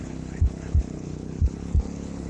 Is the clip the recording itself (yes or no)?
no